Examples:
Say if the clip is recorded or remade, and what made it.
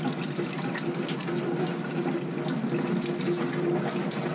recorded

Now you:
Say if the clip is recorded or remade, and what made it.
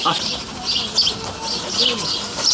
recorded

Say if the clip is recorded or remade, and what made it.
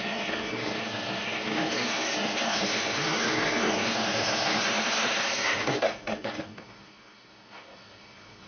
remade, codec, SNAC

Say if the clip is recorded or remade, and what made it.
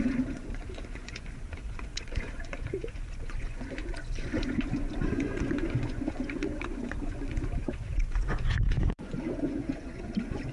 remade, vocoder, Vocos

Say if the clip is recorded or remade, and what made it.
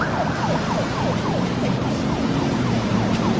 recorded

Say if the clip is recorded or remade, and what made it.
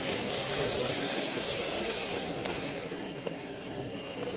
remade, codec, SNAC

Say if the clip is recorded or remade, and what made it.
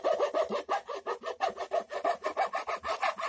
recorded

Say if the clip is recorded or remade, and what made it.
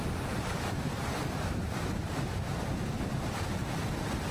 recorded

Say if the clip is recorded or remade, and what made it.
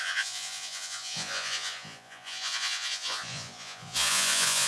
remade, vocoder, Vocos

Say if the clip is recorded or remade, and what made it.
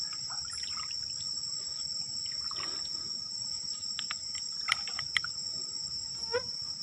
recorded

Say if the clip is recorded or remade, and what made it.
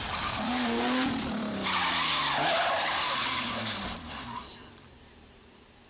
remade, vocoder, BigVGAN v2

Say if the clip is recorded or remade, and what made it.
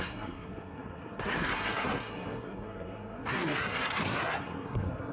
remade, codec, SNAC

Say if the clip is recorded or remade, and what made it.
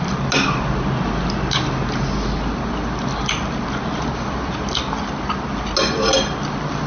recorded